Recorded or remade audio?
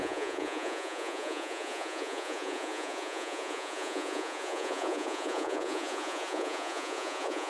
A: remade